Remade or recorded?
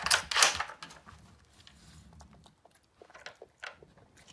recorded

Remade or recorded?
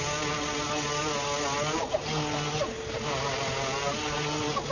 recorded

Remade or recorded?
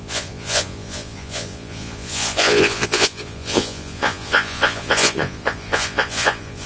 remade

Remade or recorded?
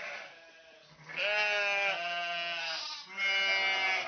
recorded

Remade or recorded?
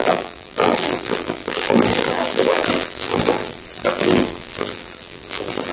remade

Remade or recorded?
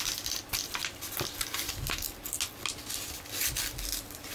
recorded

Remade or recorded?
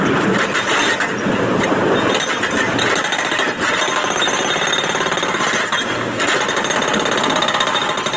recorded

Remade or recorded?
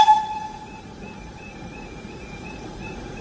remade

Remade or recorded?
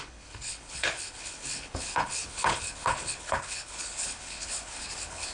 remade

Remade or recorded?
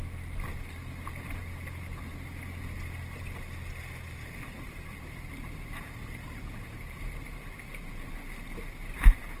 recorded